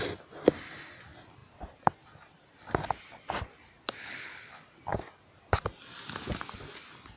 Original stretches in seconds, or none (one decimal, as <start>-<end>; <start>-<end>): 0.0-4.0; 4.6-7.2